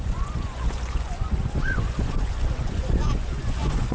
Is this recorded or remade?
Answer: remade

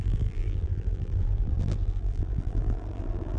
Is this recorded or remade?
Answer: remade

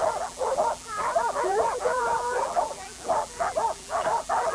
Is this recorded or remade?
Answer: remade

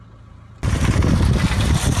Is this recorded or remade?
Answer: recorded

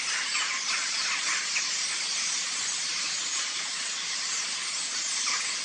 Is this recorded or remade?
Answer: recorded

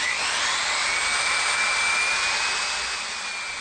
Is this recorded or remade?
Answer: recorded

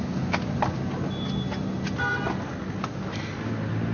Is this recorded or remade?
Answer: recorded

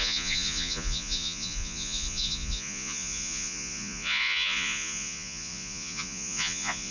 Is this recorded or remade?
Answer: remade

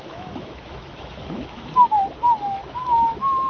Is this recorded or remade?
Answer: remade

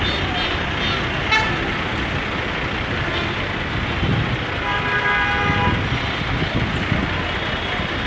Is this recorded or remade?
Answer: recorded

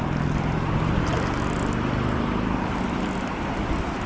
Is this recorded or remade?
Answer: recorded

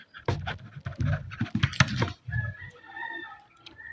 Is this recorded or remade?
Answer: recorded